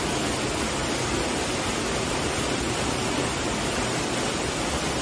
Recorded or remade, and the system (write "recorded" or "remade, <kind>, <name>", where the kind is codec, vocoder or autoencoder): remade, vocoder, BigVGAN v2